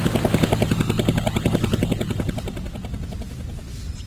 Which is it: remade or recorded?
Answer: recorded